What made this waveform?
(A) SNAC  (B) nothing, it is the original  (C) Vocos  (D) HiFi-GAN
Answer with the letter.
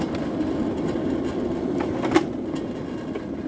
B